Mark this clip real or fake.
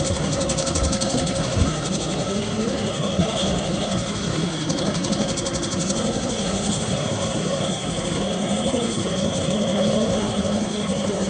fake